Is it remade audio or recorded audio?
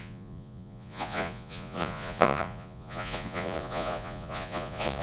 remade